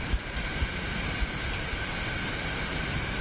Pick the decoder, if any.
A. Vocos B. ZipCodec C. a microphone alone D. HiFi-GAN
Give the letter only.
C